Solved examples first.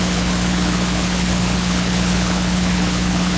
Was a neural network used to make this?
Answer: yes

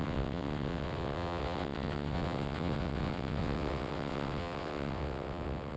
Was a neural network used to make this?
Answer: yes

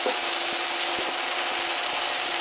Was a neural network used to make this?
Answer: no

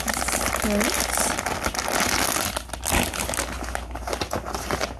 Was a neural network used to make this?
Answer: no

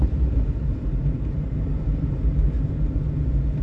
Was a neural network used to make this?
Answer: yes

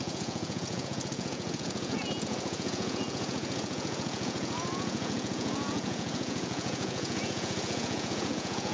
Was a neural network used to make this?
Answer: yes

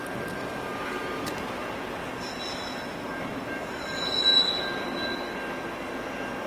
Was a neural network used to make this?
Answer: no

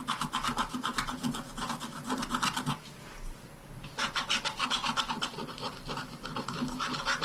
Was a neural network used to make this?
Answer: no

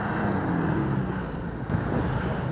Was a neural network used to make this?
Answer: no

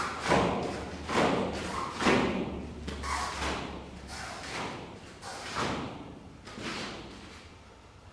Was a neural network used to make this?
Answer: no